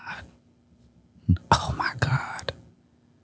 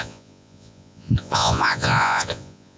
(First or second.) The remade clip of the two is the second